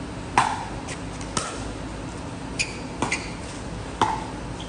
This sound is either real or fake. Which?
real